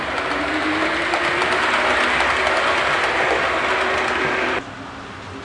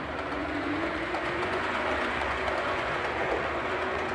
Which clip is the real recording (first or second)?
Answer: first